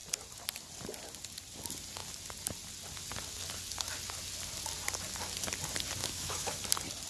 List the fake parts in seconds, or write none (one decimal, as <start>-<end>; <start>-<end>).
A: 6.0-6.6

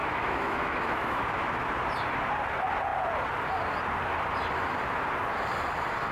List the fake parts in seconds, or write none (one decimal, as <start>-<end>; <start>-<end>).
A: 0.0-1.7

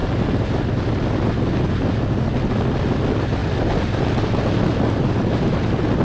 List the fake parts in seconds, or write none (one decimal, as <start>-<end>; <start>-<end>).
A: none